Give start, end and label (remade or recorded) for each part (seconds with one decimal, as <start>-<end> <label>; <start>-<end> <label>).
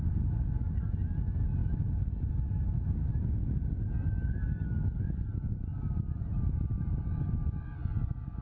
0.0-8.4 recorded